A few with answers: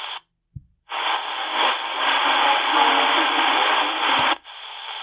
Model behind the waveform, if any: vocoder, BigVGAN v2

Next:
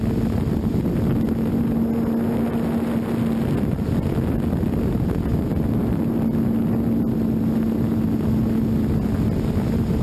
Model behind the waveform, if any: none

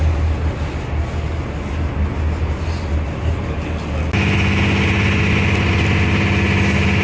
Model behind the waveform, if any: none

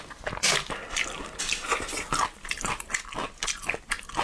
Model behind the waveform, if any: none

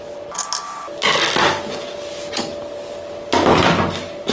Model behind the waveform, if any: none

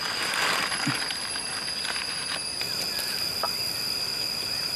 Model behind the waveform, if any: none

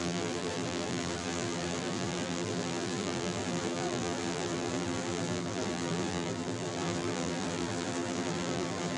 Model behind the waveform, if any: vocoder, BigVGAN v2